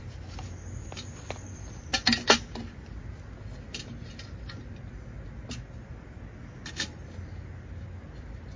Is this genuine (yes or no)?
yes